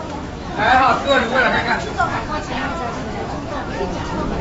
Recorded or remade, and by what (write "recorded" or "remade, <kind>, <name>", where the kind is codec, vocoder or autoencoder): remade, autoencoder, DAC-VAE